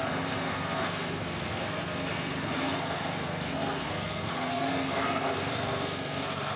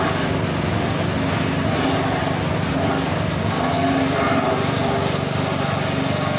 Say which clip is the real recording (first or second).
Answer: second